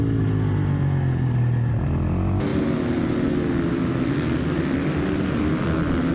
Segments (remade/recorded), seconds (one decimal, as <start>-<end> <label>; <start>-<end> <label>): 0.0-6.1 recorded